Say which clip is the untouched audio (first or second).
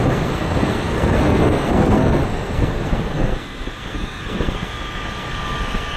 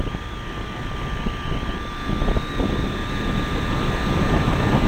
second